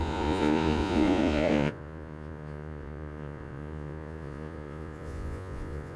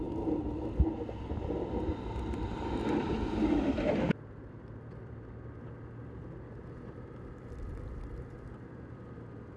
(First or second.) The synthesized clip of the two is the first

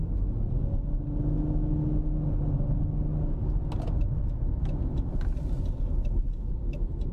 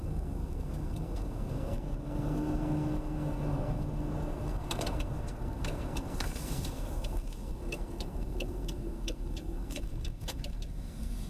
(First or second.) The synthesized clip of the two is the second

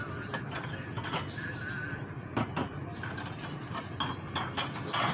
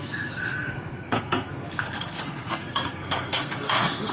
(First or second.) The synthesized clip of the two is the second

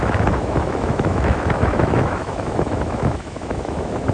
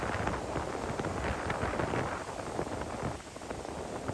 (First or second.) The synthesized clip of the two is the first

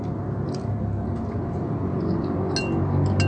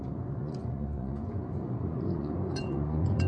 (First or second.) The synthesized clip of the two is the second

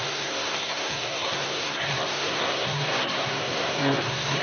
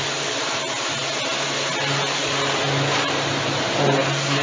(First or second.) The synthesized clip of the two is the first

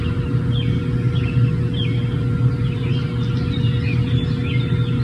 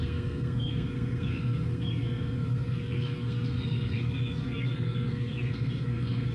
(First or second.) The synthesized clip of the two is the second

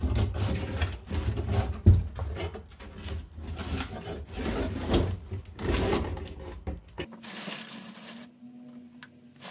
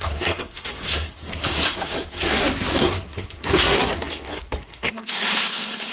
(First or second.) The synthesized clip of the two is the second